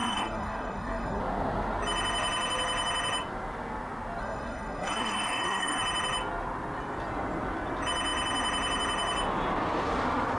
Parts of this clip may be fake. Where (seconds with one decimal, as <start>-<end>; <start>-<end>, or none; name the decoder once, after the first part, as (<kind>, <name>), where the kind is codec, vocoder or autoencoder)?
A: 0.0-1.2 (codec, SNAC); 4.2-5.8